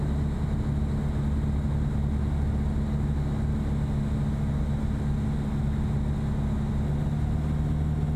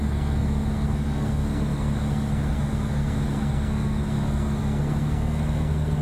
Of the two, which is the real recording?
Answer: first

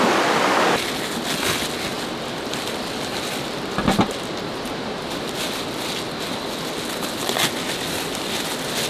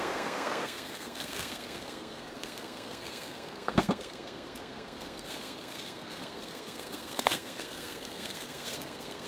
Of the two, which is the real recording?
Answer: first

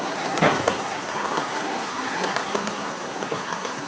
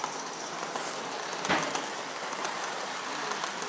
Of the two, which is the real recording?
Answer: second